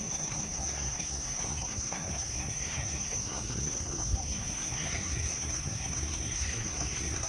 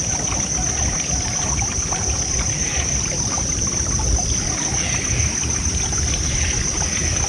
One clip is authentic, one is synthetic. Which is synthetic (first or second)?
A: first